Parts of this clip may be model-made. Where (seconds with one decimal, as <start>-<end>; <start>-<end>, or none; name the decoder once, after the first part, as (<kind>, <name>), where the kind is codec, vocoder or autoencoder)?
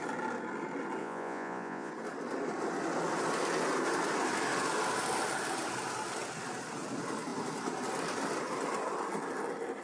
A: 1.0-1.9 (vocoder, Vocos)